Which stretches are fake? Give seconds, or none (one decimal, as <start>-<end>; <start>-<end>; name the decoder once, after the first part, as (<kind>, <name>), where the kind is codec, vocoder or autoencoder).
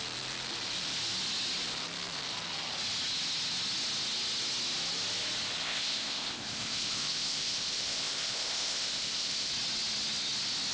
5.6-9.5 (codec, ZipCodec)